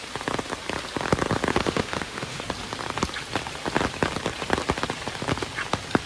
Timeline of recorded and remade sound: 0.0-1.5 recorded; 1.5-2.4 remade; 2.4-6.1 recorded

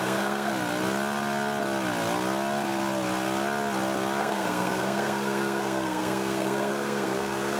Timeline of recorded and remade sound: 0.0-0.5 remade; 0.5-4.2 recorded; 4.2-7.6 remade